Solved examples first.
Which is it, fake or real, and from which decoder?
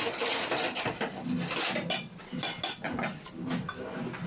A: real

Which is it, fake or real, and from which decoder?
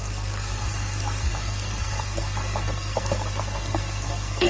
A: fake, codec, SNAC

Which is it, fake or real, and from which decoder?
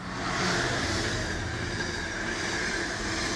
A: real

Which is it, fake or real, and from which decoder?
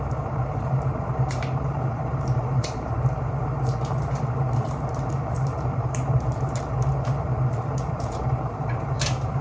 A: fake, vocoder, BigVGAN v2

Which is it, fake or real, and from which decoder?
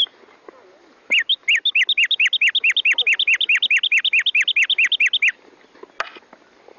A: real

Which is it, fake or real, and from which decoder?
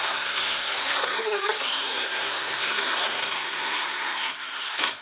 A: fake, codec, SNAC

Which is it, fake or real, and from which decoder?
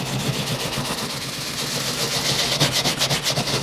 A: real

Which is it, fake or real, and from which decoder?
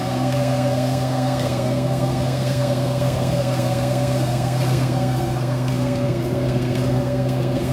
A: fake, codec, SNAC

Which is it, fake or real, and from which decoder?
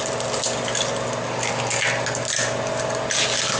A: real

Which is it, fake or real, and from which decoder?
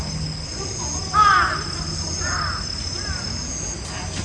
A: real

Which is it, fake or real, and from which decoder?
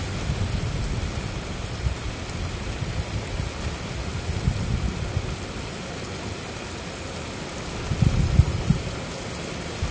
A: real